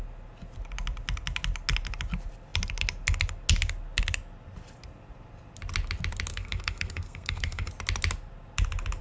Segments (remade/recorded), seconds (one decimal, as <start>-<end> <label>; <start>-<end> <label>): 0.0-6.3 recorded; 6.3-7.7 remade; 7.7-9.0 recorded